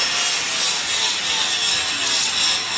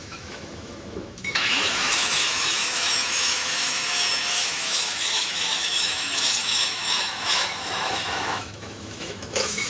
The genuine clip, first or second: first